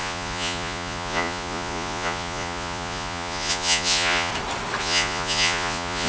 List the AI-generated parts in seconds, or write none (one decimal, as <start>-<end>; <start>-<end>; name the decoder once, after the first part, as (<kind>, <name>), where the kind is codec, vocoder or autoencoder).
0.0-4.3 (vocoder, Vocos); 4.8-6.1